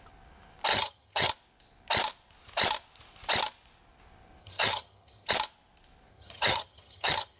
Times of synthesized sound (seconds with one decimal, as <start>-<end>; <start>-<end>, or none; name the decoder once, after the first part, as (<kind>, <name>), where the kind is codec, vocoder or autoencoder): 0.7-1.3 (vocoder, HiFi-GAN); 4.4-5.3; 6.1-7.4

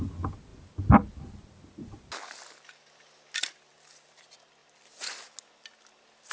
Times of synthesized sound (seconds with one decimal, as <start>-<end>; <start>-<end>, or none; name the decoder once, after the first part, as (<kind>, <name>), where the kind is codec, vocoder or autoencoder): none

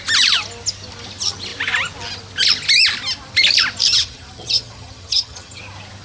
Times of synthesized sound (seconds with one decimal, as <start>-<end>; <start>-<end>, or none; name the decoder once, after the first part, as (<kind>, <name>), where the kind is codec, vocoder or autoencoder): 3.9-5.6 (vocoder, HiFi-GAN)

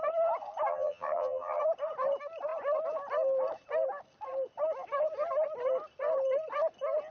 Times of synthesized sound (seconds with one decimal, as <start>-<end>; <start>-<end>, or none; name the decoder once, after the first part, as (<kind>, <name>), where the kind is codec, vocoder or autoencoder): 0.7-1.6 (vocoder, HiFi-GAN)